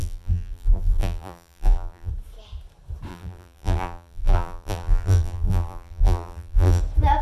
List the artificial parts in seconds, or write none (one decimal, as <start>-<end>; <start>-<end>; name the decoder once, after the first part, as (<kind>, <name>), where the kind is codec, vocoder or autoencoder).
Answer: 0.0-2.1 (vocoder, BigVGAN v2); 3.1-6.8